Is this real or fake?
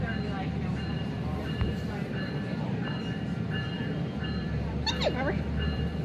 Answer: fake